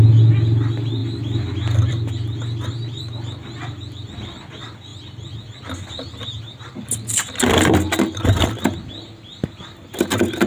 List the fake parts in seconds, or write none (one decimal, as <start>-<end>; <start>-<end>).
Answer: none